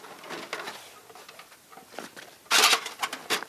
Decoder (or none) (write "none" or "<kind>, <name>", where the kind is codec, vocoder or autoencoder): none